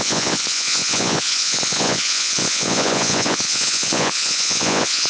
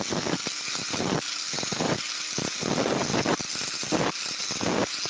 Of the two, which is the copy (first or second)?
first